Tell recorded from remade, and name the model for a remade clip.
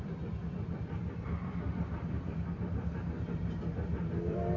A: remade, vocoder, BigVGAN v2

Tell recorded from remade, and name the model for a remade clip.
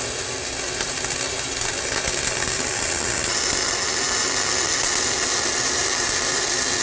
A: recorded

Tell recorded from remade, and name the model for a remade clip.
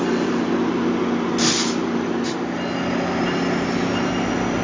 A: recorded